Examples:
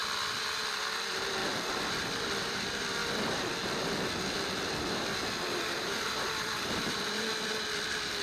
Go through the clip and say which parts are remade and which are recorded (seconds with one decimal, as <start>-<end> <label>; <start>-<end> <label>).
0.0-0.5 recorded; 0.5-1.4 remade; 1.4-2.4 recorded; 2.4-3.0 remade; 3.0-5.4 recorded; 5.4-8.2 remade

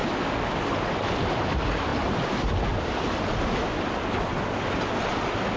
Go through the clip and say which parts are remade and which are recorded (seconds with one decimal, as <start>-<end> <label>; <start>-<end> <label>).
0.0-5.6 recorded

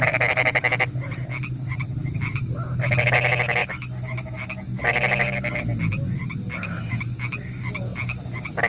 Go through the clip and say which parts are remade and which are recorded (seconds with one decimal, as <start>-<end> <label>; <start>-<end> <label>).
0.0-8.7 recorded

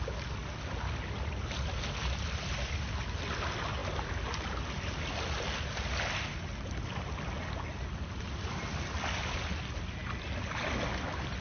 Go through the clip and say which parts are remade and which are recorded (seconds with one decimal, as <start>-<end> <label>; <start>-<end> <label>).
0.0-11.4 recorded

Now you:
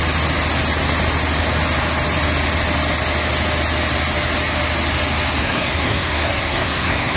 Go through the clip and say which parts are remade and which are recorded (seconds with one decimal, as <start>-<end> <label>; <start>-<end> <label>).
0.0-5.4 recorded; 5.4-7.2 remade

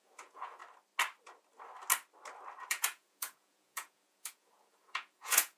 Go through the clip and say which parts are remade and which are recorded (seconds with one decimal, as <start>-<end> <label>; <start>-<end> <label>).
0.0-0.6 remade; 0.6-2.7 recorded; 2.7-5.6 remade

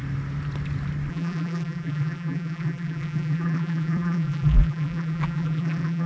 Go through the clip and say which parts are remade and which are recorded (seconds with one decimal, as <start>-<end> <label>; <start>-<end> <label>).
0.0-1.1 recorded; 1.1-6.1 remade

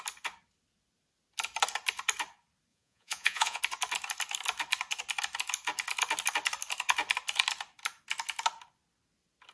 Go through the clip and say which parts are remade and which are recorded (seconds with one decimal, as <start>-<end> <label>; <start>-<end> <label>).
0.0-2.7 recorded; 2.7-3.6 remade; 3.6-9.5 recorded